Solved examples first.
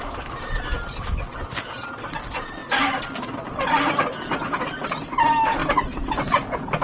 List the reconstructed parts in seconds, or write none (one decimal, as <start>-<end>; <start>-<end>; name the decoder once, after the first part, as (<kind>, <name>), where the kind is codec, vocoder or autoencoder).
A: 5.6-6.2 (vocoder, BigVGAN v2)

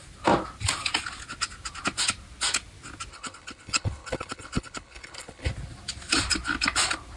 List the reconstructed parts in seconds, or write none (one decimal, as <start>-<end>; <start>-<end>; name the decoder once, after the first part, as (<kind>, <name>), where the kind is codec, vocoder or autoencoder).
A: 3.1-5.5 (codec, HILCodec)

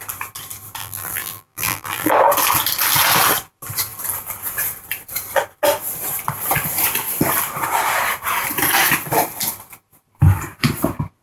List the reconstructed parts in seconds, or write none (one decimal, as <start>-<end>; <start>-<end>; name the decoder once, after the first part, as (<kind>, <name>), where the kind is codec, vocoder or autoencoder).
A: 0.8-2.1 (vocoder, BigVGAN v2)

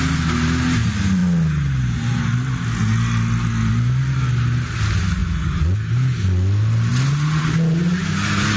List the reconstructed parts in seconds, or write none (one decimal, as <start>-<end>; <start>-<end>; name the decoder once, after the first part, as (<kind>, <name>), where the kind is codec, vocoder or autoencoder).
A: none

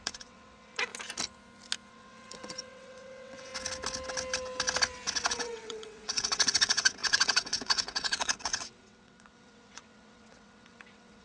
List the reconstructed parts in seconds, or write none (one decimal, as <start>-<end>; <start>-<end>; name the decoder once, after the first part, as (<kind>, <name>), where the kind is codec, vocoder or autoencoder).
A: 0.0-0.9 (vocoder, WaveNeXt); 1.9-3.5; 5.3-11.2

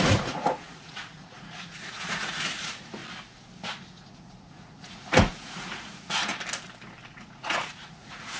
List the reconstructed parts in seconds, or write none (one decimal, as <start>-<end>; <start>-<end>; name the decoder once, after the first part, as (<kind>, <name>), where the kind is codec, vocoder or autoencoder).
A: 0.0-3.0 (vocoder, Vocos); 3.6-6.3; 7.1-8.4